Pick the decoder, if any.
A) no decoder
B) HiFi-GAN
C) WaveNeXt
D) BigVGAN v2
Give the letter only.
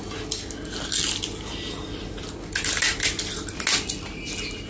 A